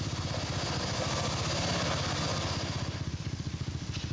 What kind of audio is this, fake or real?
real